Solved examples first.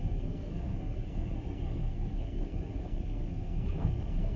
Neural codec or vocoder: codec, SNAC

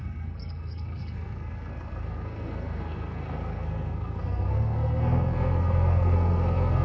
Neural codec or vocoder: codec, SNAC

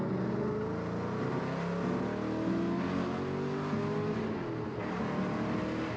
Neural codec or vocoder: none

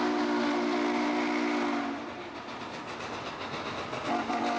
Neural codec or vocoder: none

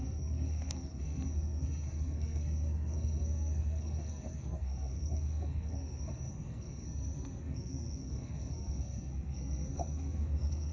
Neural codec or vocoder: codec, SNAC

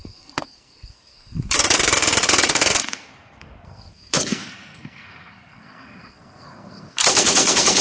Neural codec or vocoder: codec, SNAC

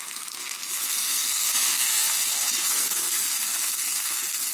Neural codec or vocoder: codec, SNAC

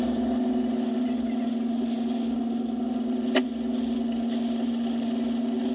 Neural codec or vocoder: none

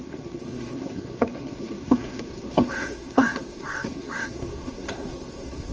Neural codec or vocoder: codec, SNAC